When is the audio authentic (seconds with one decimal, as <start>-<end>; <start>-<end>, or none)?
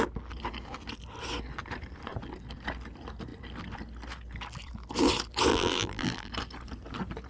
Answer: 0.0-5.5; 6.3-7.3